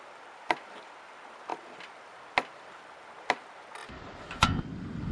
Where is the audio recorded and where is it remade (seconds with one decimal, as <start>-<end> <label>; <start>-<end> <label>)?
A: 0.0-5.1 recorded